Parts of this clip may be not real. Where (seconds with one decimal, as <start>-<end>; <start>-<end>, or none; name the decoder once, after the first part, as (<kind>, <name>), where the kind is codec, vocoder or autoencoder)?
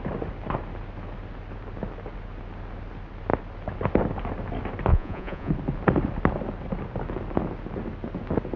4.9-5.5 (vocoder, Vocos)